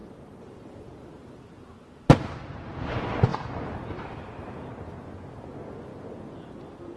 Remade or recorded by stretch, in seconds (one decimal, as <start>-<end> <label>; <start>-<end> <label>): 0.0-1.4 remade; 1.4-7.0 recorded